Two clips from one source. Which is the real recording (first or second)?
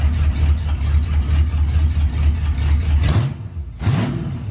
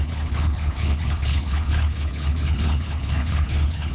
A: first